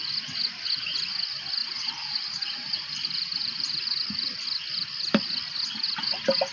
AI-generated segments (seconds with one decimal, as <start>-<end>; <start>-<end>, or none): 1.6-3.8